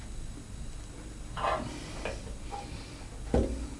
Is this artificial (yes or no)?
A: no